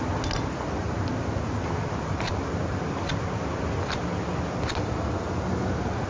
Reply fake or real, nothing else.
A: real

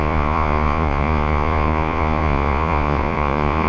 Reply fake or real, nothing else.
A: fake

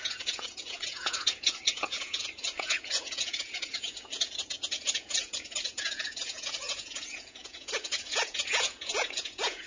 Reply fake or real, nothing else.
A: fake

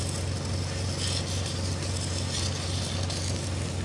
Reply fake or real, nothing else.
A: real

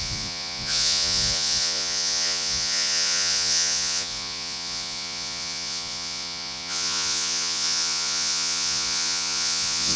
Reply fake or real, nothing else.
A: fake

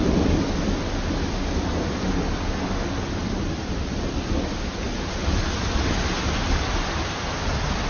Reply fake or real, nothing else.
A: real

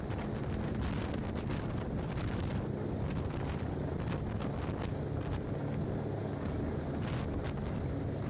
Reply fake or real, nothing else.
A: real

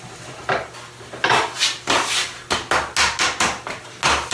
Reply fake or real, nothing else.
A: real